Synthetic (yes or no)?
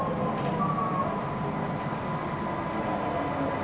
no